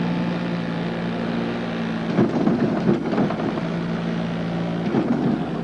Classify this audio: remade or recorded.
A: recorded